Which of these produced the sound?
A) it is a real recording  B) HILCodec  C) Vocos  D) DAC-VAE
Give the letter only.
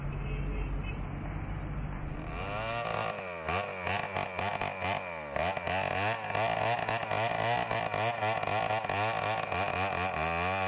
A